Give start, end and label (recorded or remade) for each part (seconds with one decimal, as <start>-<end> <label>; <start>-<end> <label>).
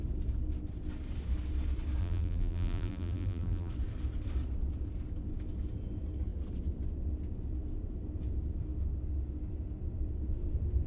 0.0-2.0 recorded; 2.0-3.7 remade; 3.7-10.9 recorded